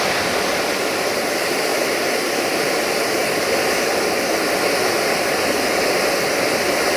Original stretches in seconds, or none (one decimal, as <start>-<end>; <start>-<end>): 0.0-7.0